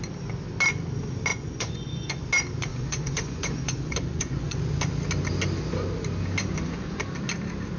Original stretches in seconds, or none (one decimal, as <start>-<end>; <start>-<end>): 0.0-1.3; 2.2-2.7; 4.7-6.4; 7.0-7.8

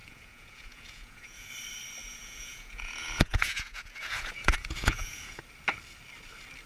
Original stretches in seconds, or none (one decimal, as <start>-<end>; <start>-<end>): 1.5-2.0; 5.4-6.7

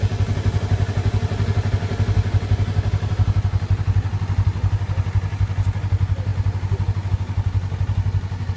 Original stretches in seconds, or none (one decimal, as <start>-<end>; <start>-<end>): 0.0-8.6

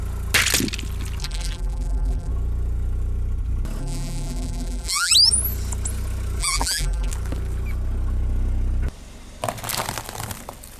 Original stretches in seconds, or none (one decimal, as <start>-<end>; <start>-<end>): 0.0-1.2; 2.3-3.8; 5.1-6.4; 7.1-10.8

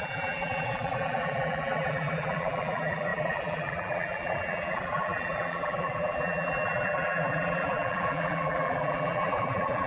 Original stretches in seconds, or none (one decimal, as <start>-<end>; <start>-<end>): none

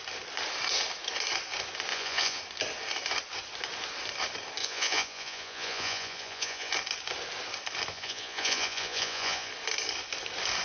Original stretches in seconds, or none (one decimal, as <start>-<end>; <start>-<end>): 0.0-1.9; 2.4-4.6; 6.7-7.9; 9.5-10.6